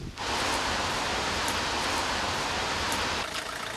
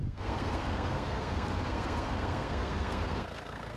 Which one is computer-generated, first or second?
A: second